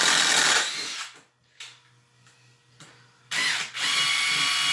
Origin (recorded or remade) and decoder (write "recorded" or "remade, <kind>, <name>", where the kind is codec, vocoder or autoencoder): recorded